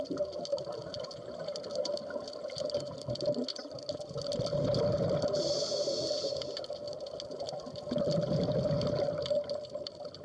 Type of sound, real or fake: real